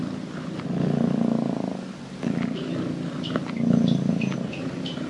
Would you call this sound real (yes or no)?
yes